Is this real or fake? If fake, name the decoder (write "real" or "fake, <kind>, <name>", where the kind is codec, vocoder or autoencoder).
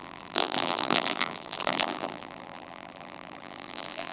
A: fake, vocoder, BigVGAN v2